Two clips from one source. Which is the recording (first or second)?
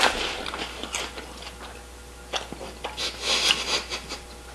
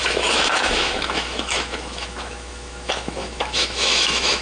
first